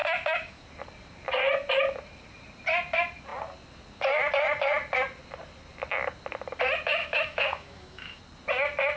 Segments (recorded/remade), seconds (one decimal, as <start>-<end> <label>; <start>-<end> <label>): 0.0-0.6 remade; 0.6-7.0 recorded; 7.0-8.2 remade; 8.2-9.0 recorded